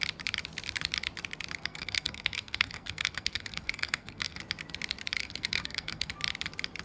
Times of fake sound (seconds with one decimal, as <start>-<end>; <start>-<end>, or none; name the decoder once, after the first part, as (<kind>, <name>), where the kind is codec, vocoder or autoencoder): 1.6-4.4 (codec, SNAC); 5.2-6.1